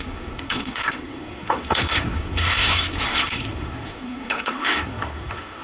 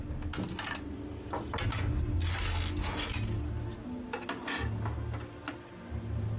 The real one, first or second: second